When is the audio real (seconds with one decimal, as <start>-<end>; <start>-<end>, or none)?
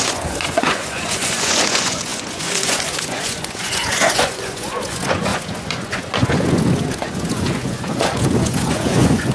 none